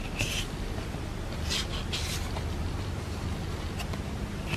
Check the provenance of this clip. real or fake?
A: real